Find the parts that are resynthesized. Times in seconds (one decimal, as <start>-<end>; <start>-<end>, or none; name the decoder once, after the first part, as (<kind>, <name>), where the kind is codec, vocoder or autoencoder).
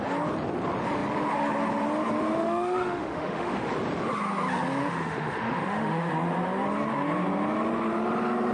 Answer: 2.4-3.7 (autoencoder, DAC-VAE); 4.8-6.1